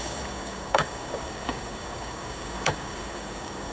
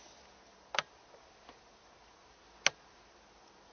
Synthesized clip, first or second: first